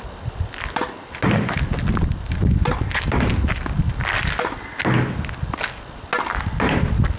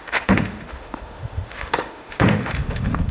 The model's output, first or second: second